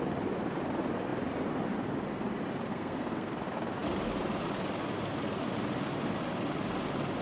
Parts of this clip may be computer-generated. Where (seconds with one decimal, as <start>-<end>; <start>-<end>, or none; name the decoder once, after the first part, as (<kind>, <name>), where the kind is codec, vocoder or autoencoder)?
2.7-3.3 (codec, SNAC)